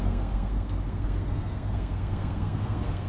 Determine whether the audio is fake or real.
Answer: fake